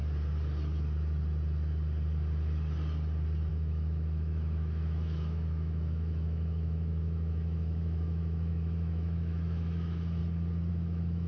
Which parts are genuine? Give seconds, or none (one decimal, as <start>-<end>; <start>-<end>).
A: 0.0-3.5; 10.2-10.7